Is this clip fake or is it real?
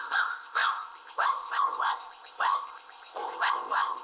fake